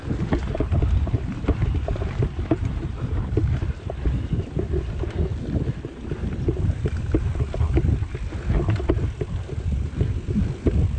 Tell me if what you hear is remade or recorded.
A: recorded